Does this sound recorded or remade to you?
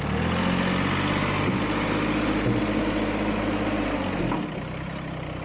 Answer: recorded